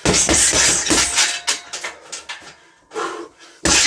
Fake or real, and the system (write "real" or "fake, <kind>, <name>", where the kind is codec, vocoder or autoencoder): real